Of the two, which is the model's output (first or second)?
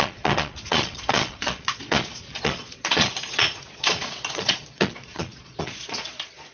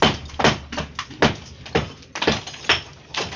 first